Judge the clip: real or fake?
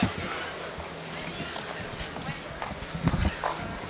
real